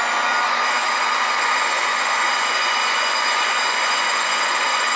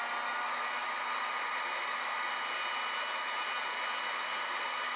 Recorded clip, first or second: second